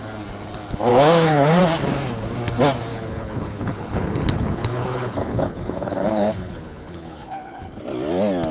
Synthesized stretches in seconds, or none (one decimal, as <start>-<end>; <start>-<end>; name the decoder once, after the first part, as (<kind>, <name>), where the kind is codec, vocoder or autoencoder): 0.9-1.6 (codec, HILCodec); 2.9-7.8